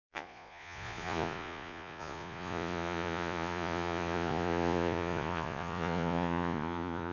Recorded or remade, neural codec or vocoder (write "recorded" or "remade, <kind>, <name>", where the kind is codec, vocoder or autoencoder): remade, vocoder, Vocos